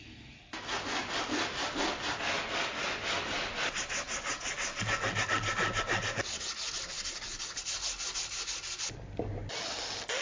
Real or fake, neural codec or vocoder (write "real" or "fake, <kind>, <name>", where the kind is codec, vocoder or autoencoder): real